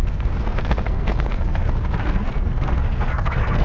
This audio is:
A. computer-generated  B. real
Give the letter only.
A